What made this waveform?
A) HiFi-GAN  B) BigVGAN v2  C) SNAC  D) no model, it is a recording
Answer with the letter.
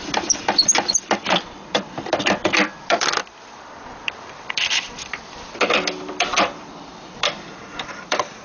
B